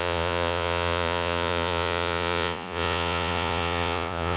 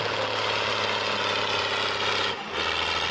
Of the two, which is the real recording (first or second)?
second